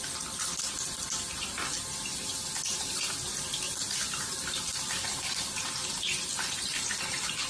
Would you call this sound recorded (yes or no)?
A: yes